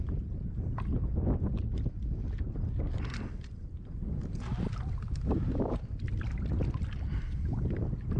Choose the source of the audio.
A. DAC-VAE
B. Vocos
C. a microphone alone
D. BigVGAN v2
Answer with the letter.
C